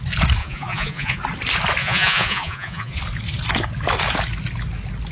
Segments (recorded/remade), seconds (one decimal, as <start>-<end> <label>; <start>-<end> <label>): 0.0-0.4 recorded; 0.4-1.2 remade; 1.2-1.8 recorded; 1.8-3.0 remade; 3.0-5.1 recorded